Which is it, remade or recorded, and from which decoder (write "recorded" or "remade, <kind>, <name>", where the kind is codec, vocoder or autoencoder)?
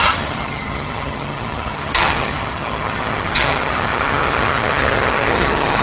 remade, vocoder, HiFi-GAN